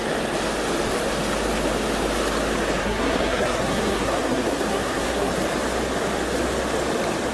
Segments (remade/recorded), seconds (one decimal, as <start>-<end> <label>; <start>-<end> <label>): 0.0-2.8 recorded; 2.8-5.3 remade; 5.3-7.3 recorded